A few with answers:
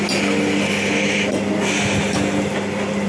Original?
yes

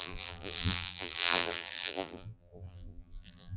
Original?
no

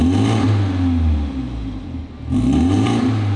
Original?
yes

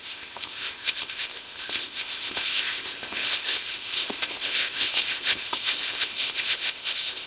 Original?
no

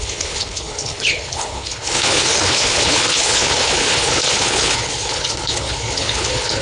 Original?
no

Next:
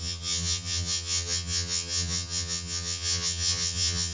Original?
no